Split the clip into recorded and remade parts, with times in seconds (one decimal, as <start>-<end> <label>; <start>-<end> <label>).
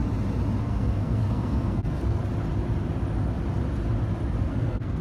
0.0-0.6 recorded; 0.6-2.2 remade; 2.2-4.4 recorded; 4.4-5.0 remade